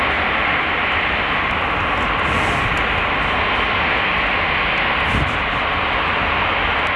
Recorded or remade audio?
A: recorded